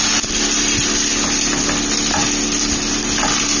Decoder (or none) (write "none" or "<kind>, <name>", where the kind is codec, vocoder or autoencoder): none